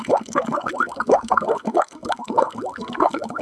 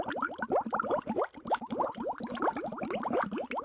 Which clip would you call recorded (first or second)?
second